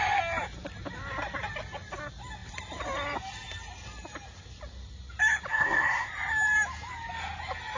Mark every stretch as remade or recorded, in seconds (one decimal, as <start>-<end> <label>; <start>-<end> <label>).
0.0-5.5 recorded; 5.5-6.1 remade; 6.1-7.8 recorded